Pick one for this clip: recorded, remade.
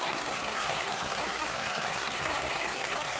remade